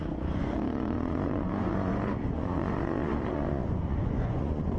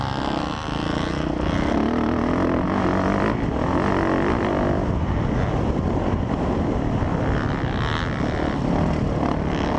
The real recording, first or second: second